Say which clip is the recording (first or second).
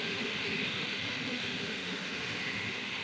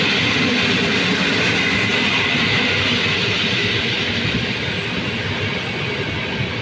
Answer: second